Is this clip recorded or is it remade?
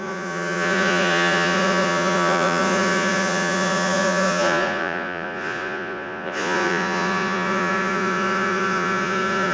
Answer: remade